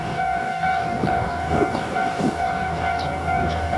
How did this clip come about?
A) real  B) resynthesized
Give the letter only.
B